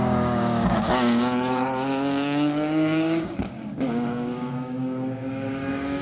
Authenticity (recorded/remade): remade